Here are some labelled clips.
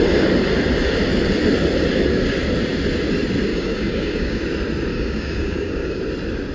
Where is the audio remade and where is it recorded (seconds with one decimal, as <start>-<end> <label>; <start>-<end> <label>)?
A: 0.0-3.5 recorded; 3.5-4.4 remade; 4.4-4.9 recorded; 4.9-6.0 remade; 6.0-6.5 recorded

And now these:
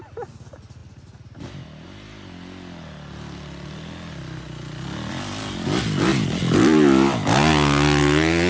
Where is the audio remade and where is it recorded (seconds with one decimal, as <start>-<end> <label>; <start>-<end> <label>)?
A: 0.0-8.5 recorded

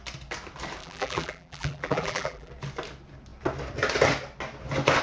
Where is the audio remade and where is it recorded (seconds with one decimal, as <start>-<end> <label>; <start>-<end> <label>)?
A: 0.0-0.8 recorded; 0.8-2.5 remade; 2.5-5.0 recorded

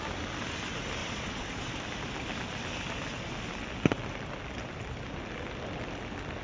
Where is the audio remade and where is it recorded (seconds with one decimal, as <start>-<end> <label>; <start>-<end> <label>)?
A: 0.0-1.0 recorded; 1.0-1.7 remade; 1.7-6.4 recorded